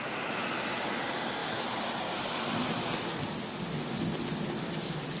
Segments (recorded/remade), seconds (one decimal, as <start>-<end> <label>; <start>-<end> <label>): 0.0-5.2 recorded